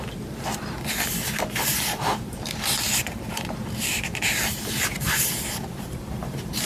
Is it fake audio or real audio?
fake